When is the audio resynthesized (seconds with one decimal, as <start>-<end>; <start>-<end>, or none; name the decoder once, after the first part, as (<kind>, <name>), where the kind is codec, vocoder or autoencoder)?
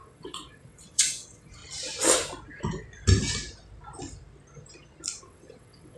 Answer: 0.0-1.6 (vocoder, WaveNeXt); 5.2-6.0